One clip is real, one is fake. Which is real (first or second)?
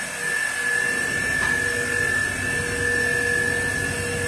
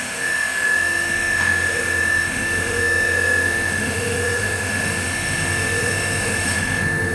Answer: first